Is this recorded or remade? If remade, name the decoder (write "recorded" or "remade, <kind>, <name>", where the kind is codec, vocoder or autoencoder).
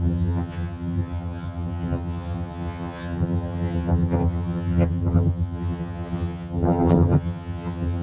remade, vocoder, HiFi-GAN